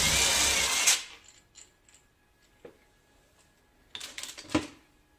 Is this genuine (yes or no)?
yes